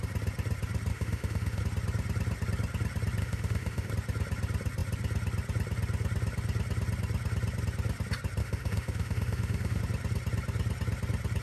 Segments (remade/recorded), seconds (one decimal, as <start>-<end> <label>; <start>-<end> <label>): 0.0-0.9 recorded; 0.9-1.6 remade; 1.6-3.2 recorded; 3.2-3.9 remade; 3.9-8.4 recorded; 8.4-9.8 remade; 9.8-11.4 recorded